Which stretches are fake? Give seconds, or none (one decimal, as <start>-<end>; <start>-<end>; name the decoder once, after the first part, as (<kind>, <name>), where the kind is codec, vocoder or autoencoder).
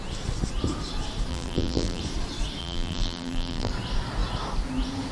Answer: 1.3-2.0 (vocoder, BigVGAN v2); 2.6-3.7